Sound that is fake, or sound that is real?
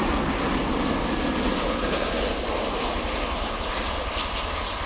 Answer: real